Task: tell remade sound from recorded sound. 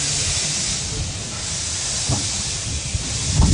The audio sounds recorded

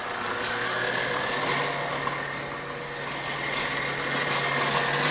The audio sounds recorded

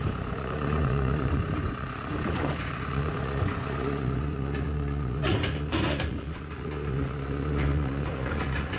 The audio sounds remade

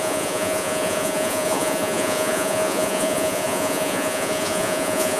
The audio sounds remade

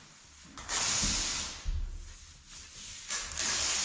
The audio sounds recorded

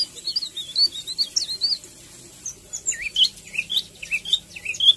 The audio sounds recorded